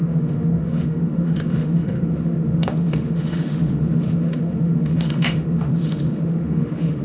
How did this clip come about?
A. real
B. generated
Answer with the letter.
B